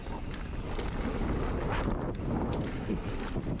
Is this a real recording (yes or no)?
yes